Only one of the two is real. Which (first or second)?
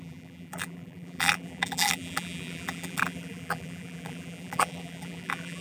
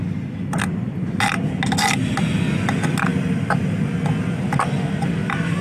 second